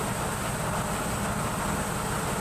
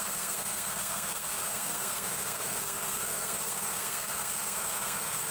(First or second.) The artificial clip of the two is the second